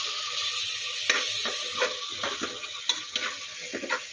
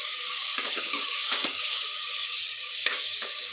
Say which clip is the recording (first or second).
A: first